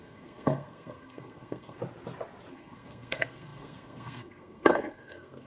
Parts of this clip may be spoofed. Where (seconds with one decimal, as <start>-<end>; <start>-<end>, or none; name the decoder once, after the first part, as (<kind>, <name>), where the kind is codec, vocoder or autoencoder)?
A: 0.0-1.8 (codec, SNAC); 2.5-5.5